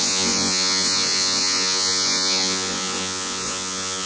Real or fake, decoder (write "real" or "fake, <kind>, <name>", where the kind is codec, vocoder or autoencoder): fake, vocoder, Vocos